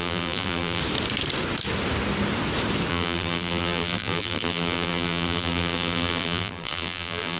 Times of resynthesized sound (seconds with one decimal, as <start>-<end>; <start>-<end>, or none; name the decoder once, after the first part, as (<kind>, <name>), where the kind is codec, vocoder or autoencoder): 0.0-0.8 (vocoder, BigVGAN v2); 2.9-7.4